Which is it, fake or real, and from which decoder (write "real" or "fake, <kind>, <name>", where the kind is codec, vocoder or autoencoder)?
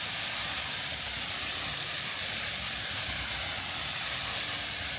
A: fake, vocoder, BigVGAN v2